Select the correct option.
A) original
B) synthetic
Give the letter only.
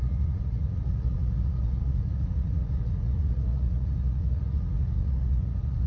B